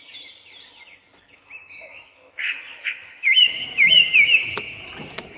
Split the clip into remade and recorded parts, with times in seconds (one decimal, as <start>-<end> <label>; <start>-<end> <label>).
0.0-1.6 recorded; 1.6-4.8 remade; 4.8-5.4 recorded